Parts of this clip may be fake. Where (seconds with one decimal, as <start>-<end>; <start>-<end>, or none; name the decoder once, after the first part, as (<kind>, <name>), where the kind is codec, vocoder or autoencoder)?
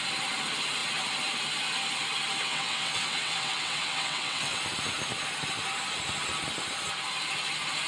2.4-4.6 (vocoder, WaveNeXt)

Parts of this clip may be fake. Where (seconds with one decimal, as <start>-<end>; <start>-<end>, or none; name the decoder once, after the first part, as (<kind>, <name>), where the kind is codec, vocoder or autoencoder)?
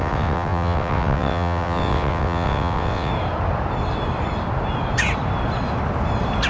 0.0-3.1 (vocoder, WaveNeXt)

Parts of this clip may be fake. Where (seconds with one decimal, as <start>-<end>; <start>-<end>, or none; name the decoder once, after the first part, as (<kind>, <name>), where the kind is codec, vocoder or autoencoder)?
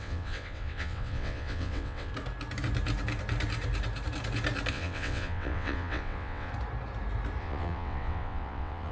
0.0-2.1 (vocoder, WaveNeXt); 4.7-6.5; 7.4-8.9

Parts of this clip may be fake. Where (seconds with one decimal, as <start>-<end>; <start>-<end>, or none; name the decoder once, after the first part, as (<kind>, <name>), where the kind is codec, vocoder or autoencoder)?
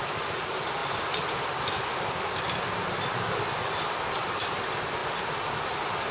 none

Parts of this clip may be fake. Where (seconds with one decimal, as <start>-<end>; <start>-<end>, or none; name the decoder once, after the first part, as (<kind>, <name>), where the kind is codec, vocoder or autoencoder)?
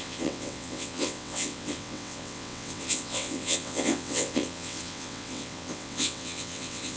0.0-7.0 (vocoder, WaveNeXt)